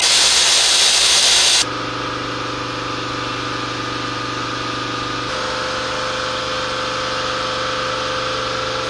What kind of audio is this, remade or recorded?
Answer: recorded